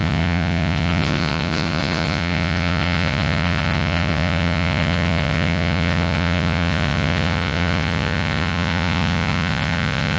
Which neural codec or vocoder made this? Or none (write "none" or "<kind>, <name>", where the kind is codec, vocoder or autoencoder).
vocoder, Vocos